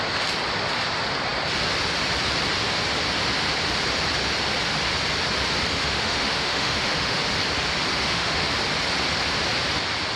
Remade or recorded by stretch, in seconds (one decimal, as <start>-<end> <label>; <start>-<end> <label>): 0.0-5.8 recorded; 5.8-7.2 remade; 7.2-7.9 recorded; 7.9-8.5 remade; 8.5-10.2 recorded